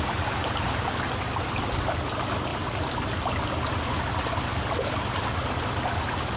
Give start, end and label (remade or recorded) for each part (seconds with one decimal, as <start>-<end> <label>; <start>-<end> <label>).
0.0-2.5 recorded; 2.5-3.0 remade; 3.0-6.4 recorded